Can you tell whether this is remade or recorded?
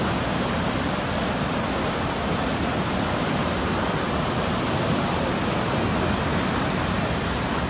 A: recorded